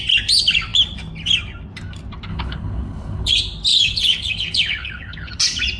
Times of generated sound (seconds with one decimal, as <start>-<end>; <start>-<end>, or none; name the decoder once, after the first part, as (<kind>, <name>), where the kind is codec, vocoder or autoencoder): 2.3-3.3 (codec, HILCodec); 3.7-5.3